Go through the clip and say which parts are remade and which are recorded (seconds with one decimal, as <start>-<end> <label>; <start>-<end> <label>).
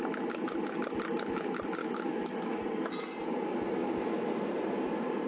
0.0-1.8 recorded; 1.8-2.6 remade; 2.6-5.3 recorded